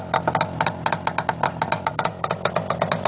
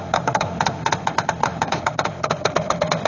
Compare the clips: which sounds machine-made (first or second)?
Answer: second